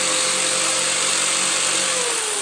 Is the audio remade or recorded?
recorded